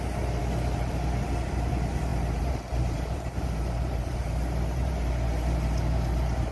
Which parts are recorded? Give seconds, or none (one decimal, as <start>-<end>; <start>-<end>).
0.0-2.1; 5.1-6.5